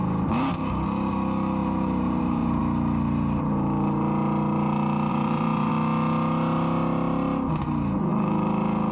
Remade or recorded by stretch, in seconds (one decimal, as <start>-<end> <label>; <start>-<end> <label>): 0.0-1.6 recorded; 1.6-2.6 remade; 2.6-5.1 recorded; 5.1-5.7 remade; 5.7-8.9 recorded